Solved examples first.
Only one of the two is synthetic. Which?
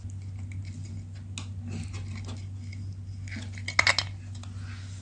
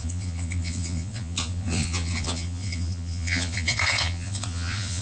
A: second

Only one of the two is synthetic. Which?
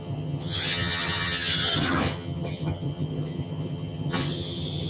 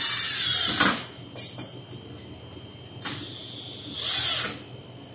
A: first